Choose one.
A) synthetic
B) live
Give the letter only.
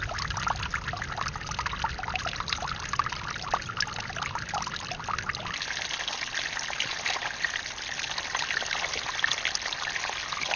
B